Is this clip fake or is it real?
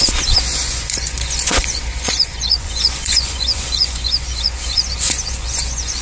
fake